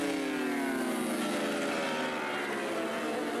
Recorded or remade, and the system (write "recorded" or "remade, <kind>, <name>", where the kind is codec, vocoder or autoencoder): recorded